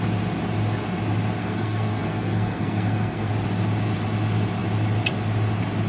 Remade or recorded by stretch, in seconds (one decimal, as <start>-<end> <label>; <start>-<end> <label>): 0.0-1.4 recorded; 1.4-3.3 remade; 3.3-5.9 recorded